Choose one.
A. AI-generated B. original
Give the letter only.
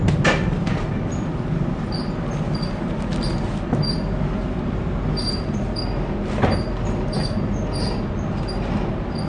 B